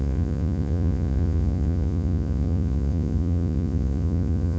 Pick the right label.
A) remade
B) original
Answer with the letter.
A